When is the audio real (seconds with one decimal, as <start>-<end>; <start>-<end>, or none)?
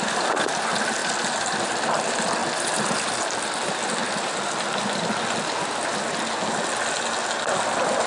0.0-2.4; 3.2-8.1